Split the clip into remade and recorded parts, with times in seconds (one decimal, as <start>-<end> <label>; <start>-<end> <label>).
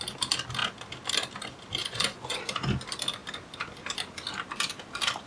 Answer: 0.0-1.8 recorded; 1.8-2.4 remade; 2.4-5.3 recorded